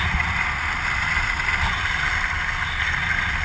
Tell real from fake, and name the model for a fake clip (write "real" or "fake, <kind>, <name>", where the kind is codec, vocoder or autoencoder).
real